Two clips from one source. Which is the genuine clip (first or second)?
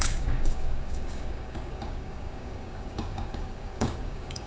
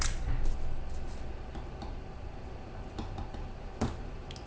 second